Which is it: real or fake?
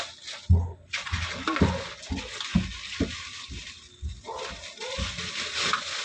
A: real